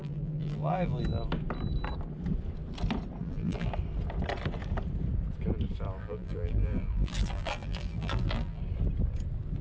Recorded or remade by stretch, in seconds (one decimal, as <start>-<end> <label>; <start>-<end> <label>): 0.0-1.0 remade; 1.0-3.2 recorded; 3.2-3.7 remade; 3.7-6.0 recorded; 6.0-8.6 remade; 8.6-9.6 recorded